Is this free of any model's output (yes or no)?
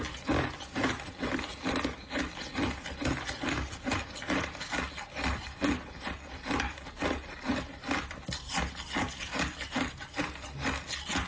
yes